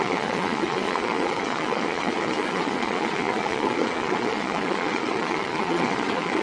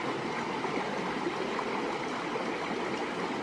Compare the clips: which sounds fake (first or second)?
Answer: first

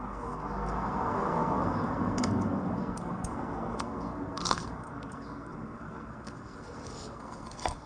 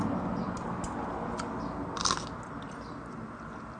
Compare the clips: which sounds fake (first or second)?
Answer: first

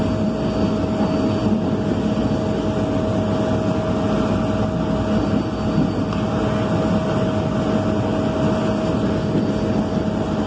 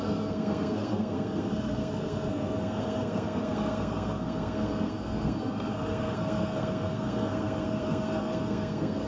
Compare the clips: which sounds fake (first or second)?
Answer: second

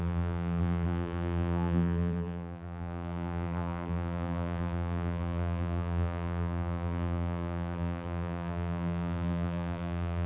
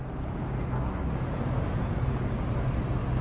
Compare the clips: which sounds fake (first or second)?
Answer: first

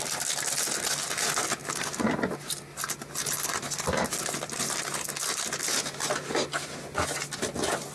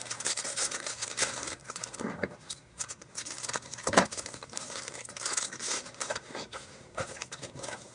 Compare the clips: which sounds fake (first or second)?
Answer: second